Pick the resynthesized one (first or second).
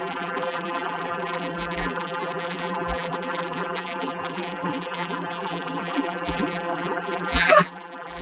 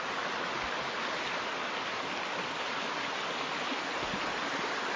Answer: first